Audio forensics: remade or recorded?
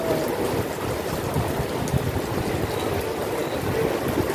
recorded